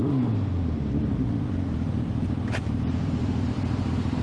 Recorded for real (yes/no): yes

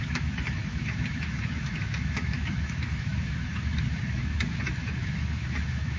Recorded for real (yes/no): no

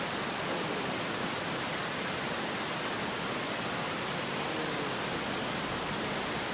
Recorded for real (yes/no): yes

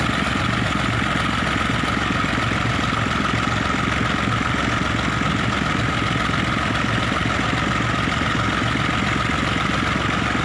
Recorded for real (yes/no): yes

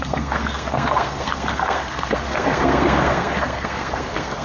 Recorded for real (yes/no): no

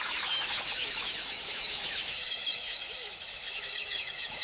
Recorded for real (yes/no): no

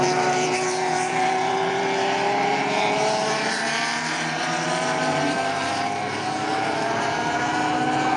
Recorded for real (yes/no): no